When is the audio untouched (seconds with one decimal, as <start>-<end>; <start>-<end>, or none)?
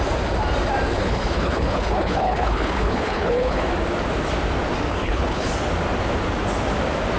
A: 0.0-1.0; 3.6-4.9; 5.5-7.2